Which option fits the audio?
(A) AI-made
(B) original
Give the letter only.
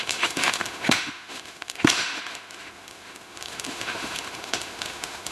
A